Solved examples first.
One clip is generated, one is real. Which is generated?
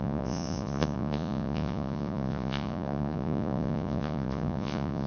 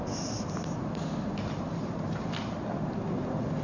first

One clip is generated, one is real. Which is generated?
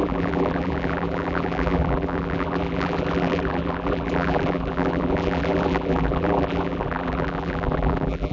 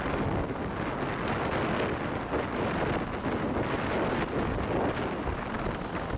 first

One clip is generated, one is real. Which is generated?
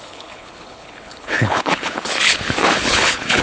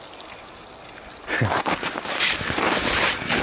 first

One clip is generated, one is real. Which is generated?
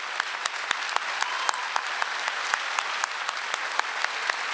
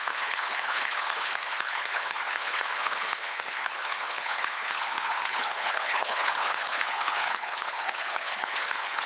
second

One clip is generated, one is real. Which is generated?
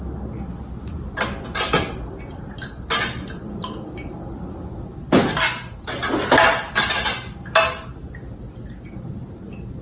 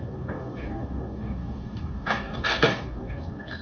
second